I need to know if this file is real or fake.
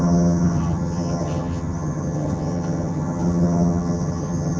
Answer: fake